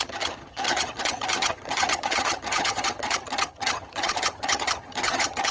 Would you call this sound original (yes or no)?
no